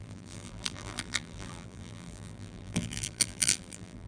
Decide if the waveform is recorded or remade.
remade